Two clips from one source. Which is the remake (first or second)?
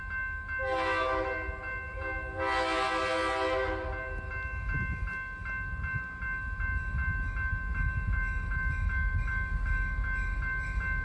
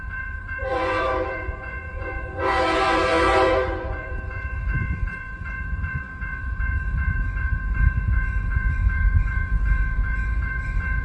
second